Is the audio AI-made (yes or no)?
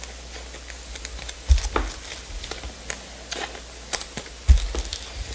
no